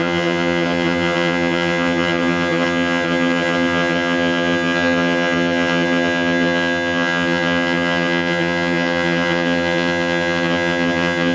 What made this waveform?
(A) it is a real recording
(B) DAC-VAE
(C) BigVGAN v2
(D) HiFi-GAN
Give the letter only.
D